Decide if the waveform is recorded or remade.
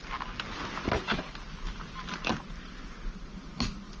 recorded